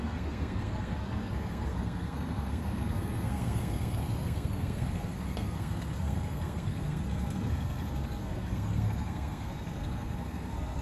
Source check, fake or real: fake